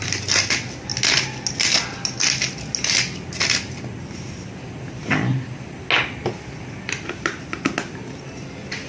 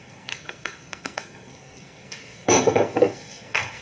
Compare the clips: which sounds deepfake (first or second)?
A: second